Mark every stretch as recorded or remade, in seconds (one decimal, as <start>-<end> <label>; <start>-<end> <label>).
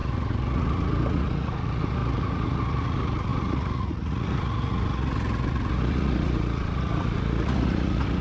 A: 0.0-8.2 remade